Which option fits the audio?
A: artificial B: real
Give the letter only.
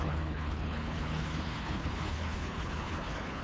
A